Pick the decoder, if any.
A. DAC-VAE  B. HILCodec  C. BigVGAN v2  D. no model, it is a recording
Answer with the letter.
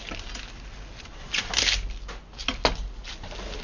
D